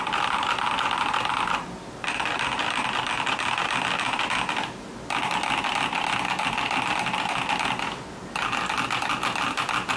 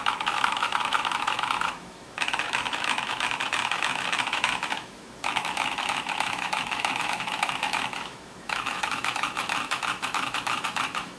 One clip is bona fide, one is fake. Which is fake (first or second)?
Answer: second